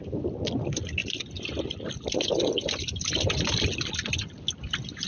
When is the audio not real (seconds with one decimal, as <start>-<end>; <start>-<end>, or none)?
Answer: 1.0-3.9